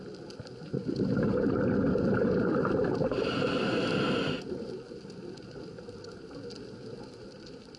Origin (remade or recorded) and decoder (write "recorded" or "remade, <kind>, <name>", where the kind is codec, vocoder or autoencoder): recorded